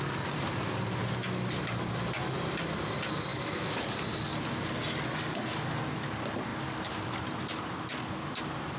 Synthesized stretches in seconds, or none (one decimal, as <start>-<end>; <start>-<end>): 3.3-3.8